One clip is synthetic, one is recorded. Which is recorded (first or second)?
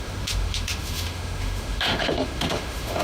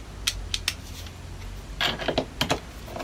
second